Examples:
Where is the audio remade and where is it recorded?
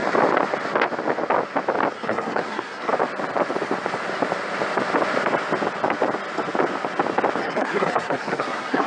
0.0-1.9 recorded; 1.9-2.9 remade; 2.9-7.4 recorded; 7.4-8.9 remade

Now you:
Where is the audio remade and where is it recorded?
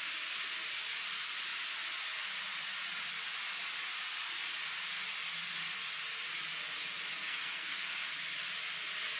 0.0-7.1 recorded; 7.1-8.1 remade; 8.1-9.2 recorded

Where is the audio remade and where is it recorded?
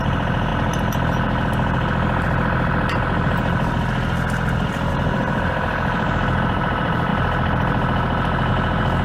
0.0-0.5 remade; 0.5-4.9 recorded; 4.9-7.1 remade; 7.1-8.5 recorded; 8.5-9.0 remade